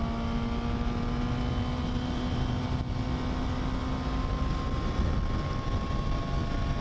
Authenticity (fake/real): real